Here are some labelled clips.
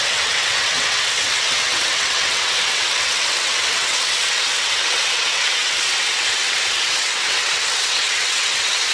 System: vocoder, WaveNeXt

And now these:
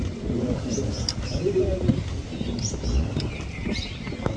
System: none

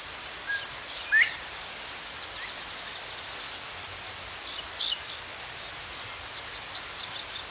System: none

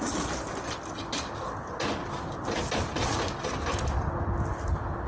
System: none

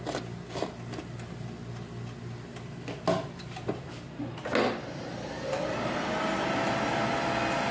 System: none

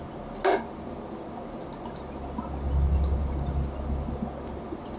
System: none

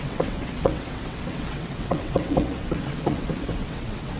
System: vocoder, WaveNeXt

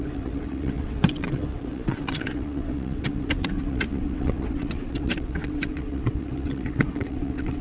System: vocoder, WaveNeXt